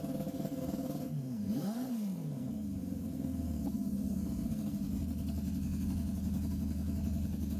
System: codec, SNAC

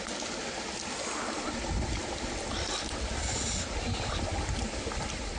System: none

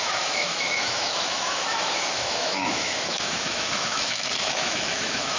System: autoencoder, DAC-VAE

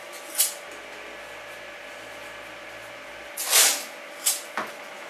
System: none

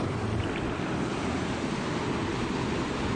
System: none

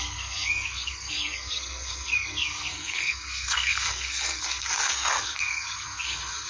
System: codec, SNAC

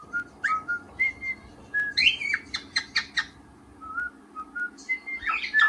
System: none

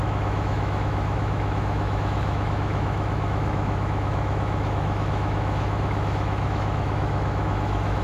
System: autoencoder, DAC-VAE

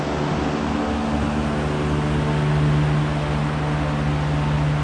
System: none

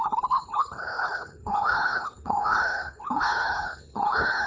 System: codec, HILCodec